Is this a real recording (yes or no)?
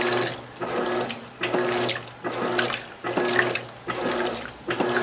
yes